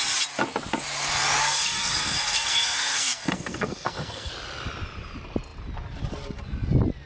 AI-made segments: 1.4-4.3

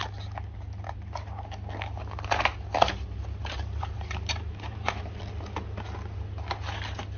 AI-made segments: 3.4-5.2

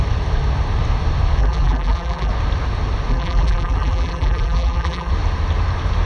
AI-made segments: 1.4-2.3; 3.1-5.1

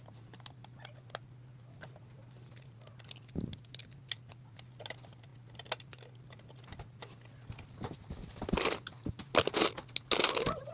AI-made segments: none

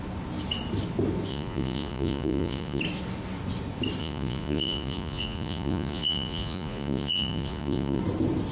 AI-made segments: 1.3-2.8; 4.0-8.0

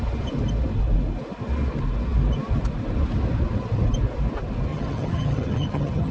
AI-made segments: 4.7-6.1

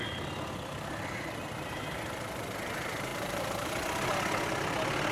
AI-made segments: 3.1-3.7

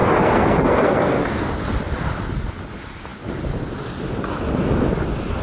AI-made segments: 0.0-1.5